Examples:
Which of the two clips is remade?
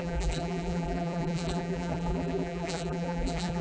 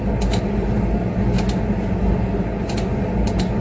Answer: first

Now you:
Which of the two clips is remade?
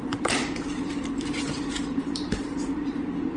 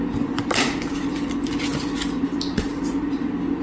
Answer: first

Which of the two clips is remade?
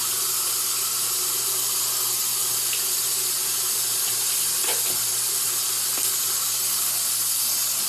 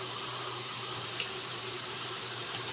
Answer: second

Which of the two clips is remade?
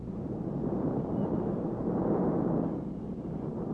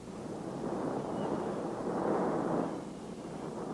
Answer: first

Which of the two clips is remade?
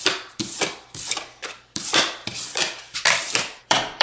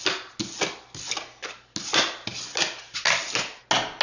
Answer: first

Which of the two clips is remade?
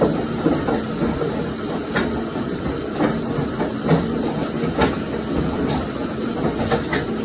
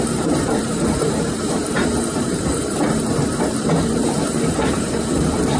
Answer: second